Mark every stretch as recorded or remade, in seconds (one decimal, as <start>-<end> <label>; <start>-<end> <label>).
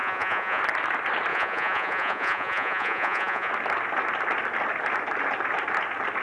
0.0-0.6 remade; 0.6-1.3 recorded; 1.3-3.5 remade; 3.5-6.2 recorded